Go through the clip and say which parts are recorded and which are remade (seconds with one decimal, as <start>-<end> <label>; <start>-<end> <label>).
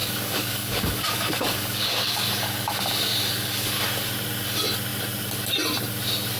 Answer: 0.0-3.8 remade; 3.8-6.4 recorded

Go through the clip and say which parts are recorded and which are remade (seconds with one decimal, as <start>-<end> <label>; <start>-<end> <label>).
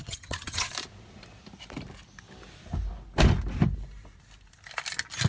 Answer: 0.0-0.7 remade; 0.7-5.3 recorded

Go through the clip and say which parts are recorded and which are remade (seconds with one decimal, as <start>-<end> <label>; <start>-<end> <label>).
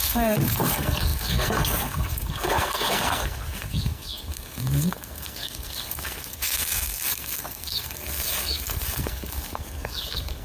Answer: 0.0-10.4 remade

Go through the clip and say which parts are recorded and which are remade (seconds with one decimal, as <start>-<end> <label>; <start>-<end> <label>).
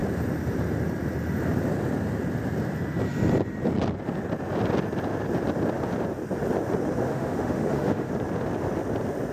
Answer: 0.0-7.0 recorded; 7.0-8.1 remade; 8.1-9.3 recorded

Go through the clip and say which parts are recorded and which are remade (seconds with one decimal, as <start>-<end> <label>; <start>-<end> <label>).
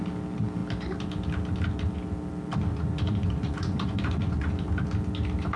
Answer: 0.0-2.7 recorded; 2.7-4.5 remade; 4.5-5.6 recorded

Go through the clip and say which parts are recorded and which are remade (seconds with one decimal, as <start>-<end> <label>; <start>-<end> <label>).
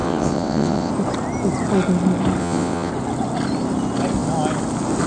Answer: 0.0-0.9 remade; 0.9-2.4 recorded; 2.4-2.9 remade; 2.9-5.1 recorded